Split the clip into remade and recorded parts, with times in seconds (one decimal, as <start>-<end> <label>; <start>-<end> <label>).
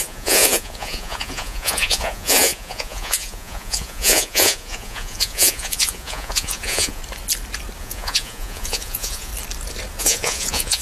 0.0-7.0 remade; 7.0-7.8 recorded; 7.8-9.3 remade; 9.3-10.0 recorded; 10.0-10.8 remade